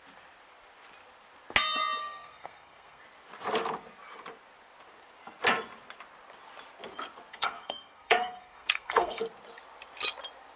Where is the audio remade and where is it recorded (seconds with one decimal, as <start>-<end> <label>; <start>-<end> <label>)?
0.0-2.0 recorded; 2.0-3.0 remade; 3.0-7.3 recorded; 7.3-9.2 remade; 9.2-10.6 recorded